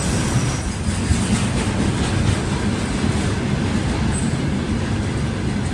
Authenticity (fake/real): real